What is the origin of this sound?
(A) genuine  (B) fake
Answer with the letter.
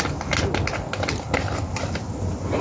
A